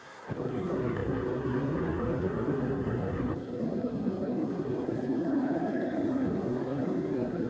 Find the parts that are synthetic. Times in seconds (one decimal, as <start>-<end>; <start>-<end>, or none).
0.0-7.5